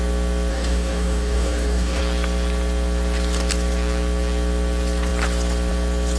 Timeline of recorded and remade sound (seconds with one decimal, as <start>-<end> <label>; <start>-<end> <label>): 0.0-0.5 recorded; 0.5-2.0 remade; 2.0-6.2 recorded